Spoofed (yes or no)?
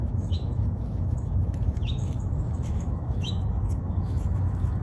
yes